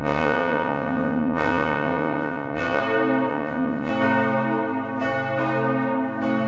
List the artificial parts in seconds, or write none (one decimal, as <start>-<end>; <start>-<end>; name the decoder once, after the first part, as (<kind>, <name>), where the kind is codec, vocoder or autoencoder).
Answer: 0.0-2.8 (vocoder, WaveNeXt); 3.3-3.9